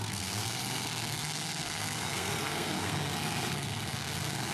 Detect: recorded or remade remade